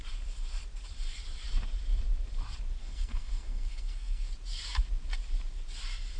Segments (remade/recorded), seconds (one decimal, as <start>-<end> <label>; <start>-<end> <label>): 0.0-2.8 recorded; 2.8-4.3 remade; 4.3-6.2 recorded